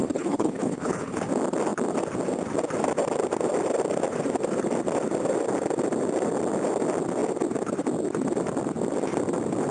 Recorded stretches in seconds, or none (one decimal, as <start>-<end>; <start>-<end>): 1.2-9.7